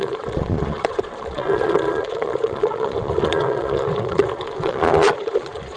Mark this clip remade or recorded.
remade